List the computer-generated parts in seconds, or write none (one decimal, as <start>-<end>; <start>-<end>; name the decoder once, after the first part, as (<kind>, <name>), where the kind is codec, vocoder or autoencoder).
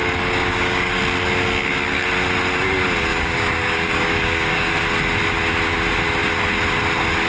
0.0-1.0 (codec, DAC); 3.1-4.7